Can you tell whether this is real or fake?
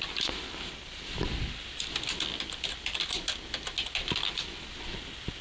real